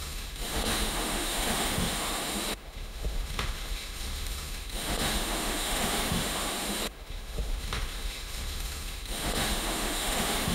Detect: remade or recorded remade